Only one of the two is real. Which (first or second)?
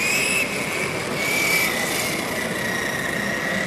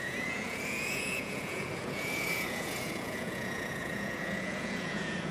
first